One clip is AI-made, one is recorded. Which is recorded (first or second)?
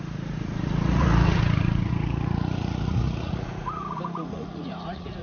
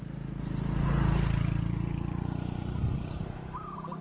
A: second